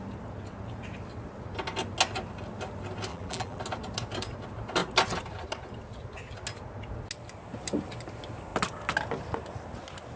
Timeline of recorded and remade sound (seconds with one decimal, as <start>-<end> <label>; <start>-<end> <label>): 0.0-3.1 recorded; 3.1-3.6 remade; 3.6-10.2 recorded